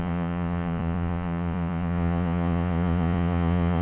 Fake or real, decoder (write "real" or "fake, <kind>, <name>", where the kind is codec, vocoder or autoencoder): fake, vocoder, Vocos